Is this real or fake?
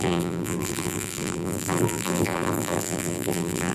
fake